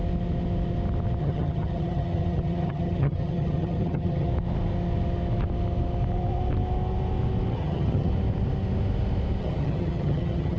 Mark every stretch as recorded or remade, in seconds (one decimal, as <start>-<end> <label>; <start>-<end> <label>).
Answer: 0.0-1.2 recorded; 1.2-4.3 remade; 4.3-7.5 recorded; 7.5-8.1 remade; 8.1-9.4 recorded; 9.4-10.6 remade